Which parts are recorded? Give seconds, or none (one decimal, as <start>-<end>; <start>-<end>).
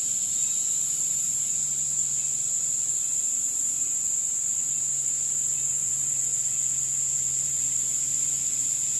2.0-2.9; 6.3-7.3; 8.1-9.0